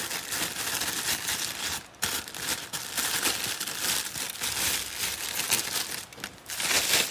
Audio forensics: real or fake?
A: real